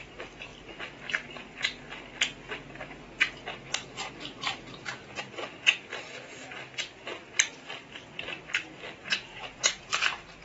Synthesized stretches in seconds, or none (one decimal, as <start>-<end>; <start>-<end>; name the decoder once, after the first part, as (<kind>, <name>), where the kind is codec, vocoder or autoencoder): 9.0-9.9 (vocoder, Vocos)